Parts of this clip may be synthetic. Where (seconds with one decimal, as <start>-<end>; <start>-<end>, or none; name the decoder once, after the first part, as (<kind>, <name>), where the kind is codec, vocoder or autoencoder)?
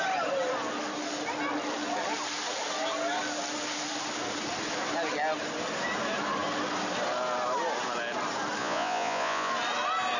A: 8.6-9.5 (vocoder, Vocos)